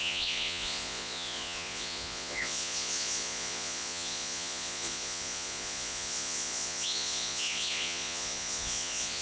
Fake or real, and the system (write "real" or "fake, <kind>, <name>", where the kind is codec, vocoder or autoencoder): fake, vocoder, Vocos